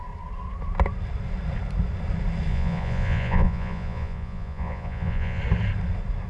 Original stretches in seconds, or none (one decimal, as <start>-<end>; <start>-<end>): 0.0-2.5; 5.4-6.3